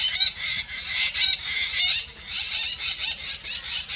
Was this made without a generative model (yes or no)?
yes